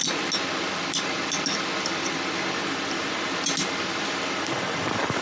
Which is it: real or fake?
real